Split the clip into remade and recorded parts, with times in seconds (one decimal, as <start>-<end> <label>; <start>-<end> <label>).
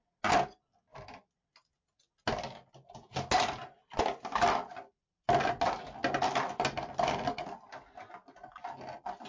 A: 0.0-9.3 recorded